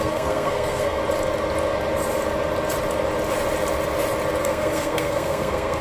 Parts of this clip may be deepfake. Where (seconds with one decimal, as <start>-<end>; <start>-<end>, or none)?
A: 0.0-1.0; 4.4-5.8